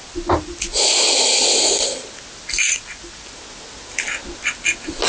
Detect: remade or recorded recorded